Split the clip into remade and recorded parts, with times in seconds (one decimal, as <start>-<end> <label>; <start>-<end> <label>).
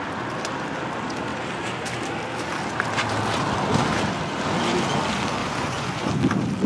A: 0.0-5.4 recorded; 5.4-6.1 remade; 6.1-6.7 recorded